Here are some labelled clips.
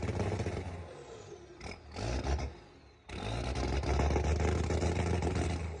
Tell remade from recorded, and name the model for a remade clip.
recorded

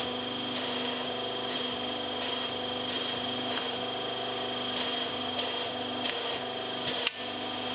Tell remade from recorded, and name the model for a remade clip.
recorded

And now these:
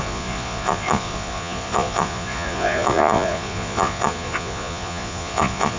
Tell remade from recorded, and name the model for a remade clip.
remade, vocoder, Vocos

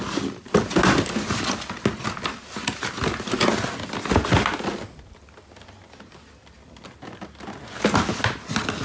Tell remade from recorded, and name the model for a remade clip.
recorded